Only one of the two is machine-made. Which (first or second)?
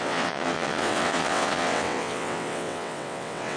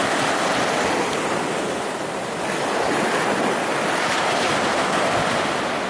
first